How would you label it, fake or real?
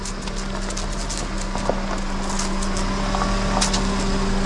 real